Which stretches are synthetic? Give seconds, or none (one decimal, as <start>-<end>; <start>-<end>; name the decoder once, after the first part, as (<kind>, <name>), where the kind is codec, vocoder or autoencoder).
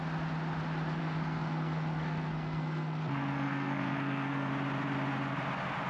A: 1.0-4.5 (codec, SNAC)